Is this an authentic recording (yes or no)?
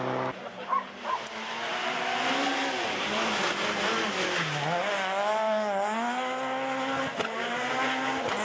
yes